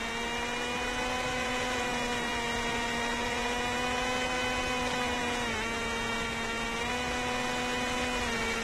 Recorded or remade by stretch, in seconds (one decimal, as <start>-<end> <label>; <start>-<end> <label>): 0.0-1.3 recorded; 1.3-1.9 remade; 1.9-2.3 recorded; 2.3-3.5 remade; 3.5-8.6 recorded